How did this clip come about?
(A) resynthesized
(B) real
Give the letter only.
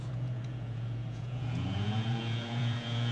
A